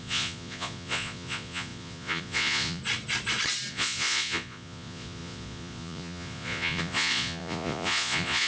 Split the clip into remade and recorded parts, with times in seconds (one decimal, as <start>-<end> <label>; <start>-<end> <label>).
0.0-2.8 remade; 2.8-3.7 recorded; 3.7-8.5 remade